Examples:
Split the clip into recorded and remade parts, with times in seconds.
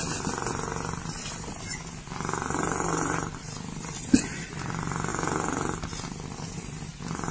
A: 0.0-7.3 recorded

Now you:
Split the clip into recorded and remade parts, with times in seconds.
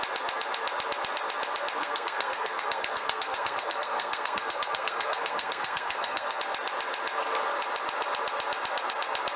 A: 0.0-1.8 recorded; 1.8-6.4 remade; 6.4-9.4 recorded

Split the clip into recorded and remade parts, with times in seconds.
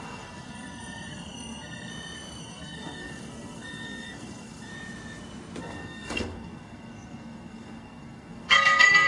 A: 0.0-1.9 remade; 1.9-2.4 recorded; 2.4-4.7 remade; 4.7-5.6 recorded; 5.6-9.1 remade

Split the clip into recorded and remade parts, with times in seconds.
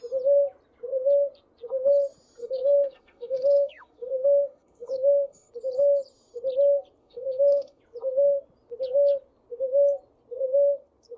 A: 0.0-2.4 recorded; 2.4-5.5 remade; 5.5-7.0 recorded; 7.0-7.8 remade; 7.8-11.2 recorded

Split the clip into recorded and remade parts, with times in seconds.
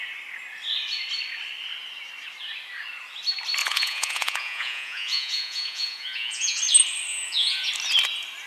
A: 0.0-3.6 recorded; 3.6-6.6 remade; 6.6-7.1 recorded; 7.1-7.7 remade; 7.7-8.5 recorded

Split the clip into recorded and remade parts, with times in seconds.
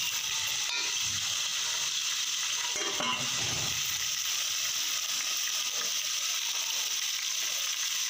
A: 0.0-3.1 recorded; 3.1-4.1 remade; 4.1-8.1 recorded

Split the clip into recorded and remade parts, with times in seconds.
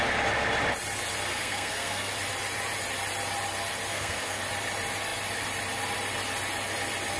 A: 0.0-1.3 recorded; 1.3-2.1 remade; 2.1-3.9 recorded; 3.9-4.4 remade; 4.4-7.2 recorded